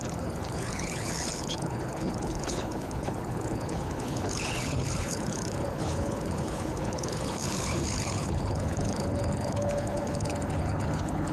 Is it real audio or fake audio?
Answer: fake